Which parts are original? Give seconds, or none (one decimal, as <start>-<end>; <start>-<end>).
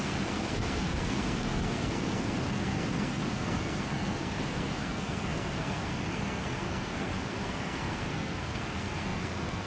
none